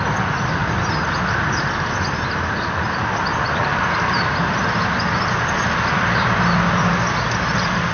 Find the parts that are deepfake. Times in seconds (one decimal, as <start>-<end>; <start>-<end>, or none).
0.6-1.1; 3.3-5.5